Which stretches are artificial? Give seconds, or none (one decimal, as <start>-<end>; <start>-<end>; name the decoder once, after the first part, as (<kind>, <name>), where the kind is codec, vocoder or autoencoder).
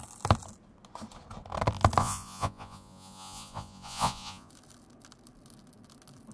2.0-4.5 (vocoder, Vocos)